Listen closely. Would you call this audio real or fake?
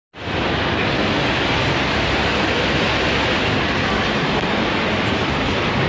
real